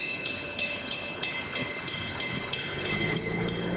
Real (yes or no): no